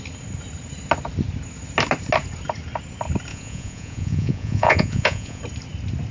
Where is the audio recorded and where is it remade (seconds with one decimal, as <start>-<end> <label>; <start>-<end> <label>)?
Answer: 0.0-3.3 recorded; 3.3-5.4 remade; 5.4-6.1 recorded